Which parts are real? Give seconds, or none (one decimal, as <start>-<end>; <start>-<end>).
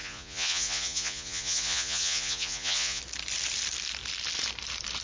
3.0-5.0